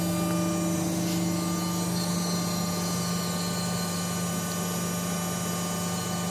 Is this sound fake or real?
real